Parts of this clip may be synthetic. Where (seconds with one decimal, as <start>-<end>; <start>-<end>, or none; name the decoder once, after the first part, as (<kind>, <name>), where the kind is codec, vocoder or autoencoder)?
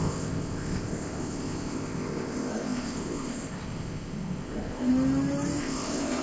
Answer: 0.0-4.9 (codec, ZipCodec); 5.6-6.2